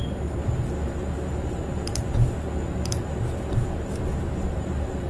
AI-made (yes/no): yes